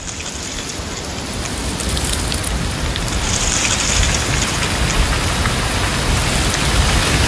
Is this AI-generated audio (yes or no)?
no